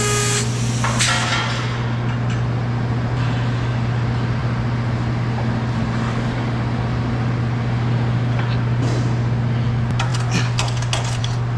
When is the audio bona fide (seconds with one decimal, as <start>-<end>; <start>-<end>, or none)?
0.0-11.6